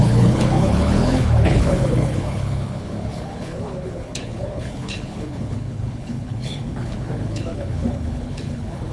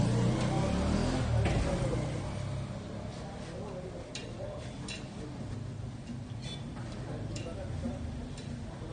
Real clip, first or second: second